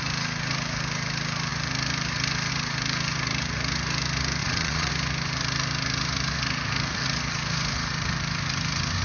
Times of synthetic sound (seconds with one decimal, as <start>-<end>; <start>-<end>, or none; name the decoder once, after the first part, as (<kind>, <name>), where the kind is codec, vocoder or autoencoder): 4.4-4.9 (vocoder, Vocos)